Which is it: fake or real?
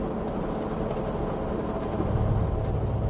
real